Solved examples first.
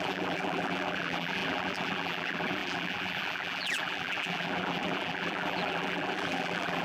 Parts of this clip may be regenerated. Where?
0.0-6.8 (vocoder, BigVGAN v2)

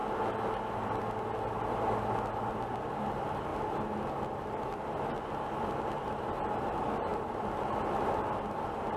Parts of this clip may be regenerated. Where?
2.5-7.1 (vocoder, BigVGAN v2); 8.3-9.0

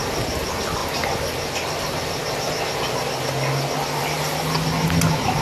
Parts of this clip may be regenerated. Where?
none

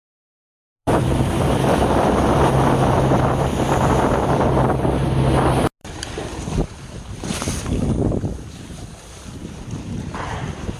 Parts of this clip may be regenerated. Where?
0.8-3.9 (vocoder, BigVGAN v2); 5.8-8.5

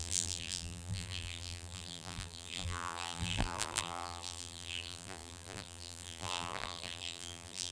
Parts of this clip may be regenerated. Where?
0.0-7.7 (vocoder, BigVGAN v2)